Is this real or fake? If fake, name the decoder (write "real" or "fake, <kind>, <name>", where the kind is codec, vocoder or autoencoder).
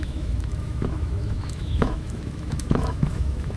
fake, autoencoder, DAC-VAE